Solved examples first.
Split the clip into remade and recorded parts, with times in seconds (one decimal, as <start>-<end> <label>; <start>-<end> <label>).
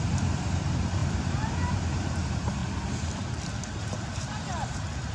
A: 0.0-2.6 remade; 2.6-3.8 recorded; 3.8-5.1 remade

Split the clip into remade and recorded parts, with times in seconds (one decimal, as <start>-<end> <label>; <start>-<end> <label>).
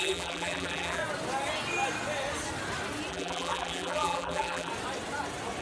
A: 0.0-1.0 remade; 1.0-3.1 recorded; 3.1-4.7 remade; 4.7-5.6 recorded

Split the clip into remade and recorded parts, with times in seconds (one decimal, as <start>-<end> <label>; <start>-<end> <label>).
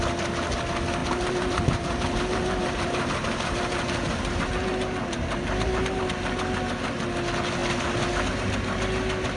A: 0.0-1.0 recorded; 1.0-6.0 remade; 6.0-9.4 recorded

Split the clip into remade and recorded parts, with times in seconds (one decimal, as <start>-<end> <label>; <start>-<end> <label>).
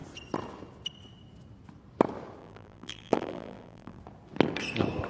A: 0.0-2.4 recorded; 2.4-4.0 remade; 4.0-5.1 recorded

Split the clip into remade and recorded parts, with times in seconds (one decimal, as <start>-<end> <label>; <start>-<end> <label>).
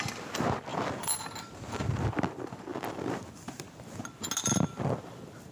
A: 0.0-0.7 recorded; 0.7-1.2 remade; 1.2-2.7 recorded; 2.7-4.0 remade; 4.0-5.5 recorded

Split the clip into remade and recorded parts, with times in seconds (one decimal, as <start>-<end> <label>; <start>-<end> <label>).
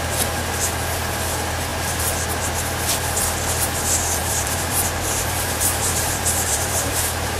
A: 0.0-4.2 recorded; 4.2-7.0 remade; 7.0-7.4 recorded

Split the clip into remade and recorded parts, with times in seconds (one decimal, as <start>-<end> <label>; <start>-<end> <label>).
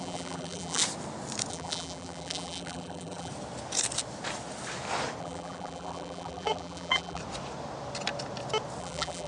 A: 0.0-0.8 remade; 0.8-1.5 recorded; 1.5-3.3 remade; 3.3-5.2 recorded; 5.2-7.2 remade; 7.2-8.8 recorded; 8.8-9.3 remade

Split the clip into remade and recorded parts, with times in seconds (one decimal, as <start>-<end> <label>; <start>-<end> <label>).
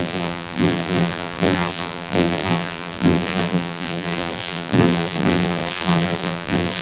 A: 0.0-6.8 remade